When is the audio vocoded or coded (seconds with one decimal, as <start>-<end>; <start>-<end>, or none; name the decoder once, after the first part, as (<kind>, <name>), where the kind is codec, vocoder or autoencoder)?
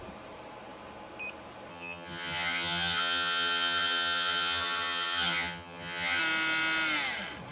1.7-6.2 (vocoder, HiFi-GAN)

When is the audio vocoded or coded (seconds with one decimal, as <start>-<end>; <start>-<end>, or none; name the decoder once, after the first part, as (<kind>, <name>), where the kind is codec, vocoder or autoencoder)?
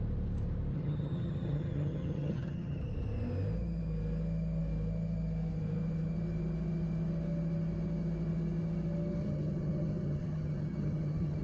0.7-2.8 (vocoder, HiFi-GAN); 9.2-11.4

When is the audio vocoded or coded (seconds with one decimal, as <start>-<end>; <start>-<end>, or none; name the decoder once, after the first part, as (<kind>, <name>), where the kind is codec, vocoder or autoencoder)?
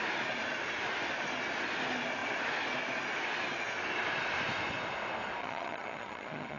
5.4-6.6 (vocoder, HiFi-GAN)